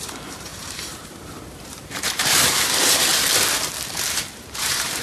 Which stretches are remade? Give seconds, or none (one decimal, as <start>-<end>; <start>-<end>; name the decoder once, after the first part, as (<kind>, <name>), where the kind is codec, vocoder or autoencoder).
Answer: 0.0-3.1 (vocoder, BigVGAN v2); 4.0-5.0